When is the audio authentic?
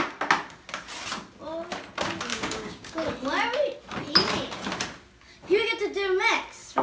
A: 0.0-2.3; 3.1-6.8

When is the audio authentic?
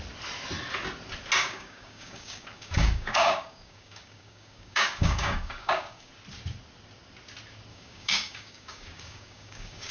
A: 0.0-1.4; 6.1-7.7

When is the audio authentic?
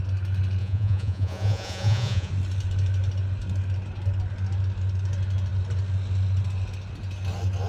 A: 0.0-0.6; 2.3-7.7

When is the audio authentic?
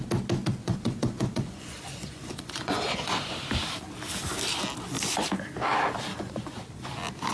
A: 0.0-0.6; 3.3-6.1; 6.6-7.3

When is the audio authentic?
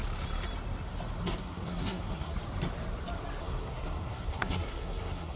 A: 0.0-1.4; 2.3-3.4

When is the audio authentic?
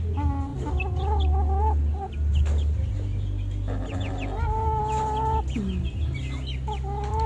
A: 0.0-7.3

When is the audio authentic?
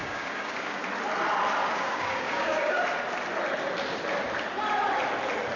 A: 0.8-1.6; 2.8-5.6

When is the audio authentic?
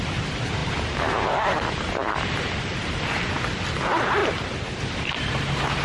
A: 0.0-0.6; 3.4-4.2; 4.8-5.8